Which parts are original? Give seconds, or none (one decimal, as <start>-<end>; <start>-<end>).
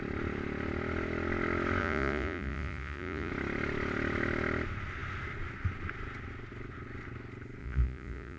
0.0-1.8; 3.3-7.6